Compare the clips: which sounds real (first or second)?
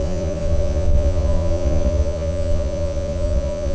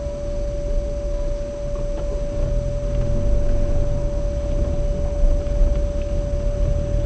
second